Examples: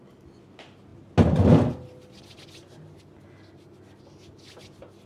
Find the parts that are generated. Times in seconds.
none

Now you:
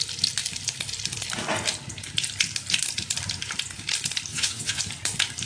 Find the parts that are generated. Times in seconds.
4.3-4.8 (vocoder, WaveNeXt)